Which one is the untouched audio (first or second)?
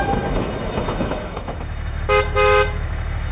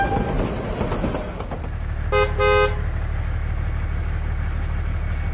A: second